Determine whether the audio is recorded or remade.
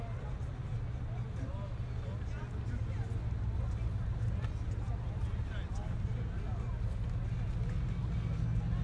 recorded